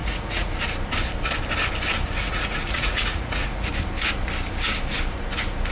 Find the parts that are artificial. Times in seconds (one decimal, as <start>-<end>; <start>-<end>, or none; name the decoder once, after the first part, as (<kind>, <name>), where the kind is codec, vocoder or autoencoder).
0.0-0.5 (vocoder, Vocos); 2.2-3.7